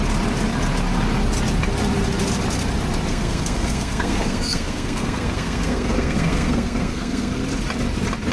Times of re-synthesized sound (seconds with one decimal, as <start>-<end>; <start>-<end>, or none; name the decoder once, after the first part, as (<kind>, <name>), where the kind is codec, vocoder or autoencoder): 3.1-7.4 (codec, SNAC)